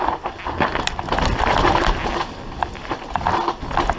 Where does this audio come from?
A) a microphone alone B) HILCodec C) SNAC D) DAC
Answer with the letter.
A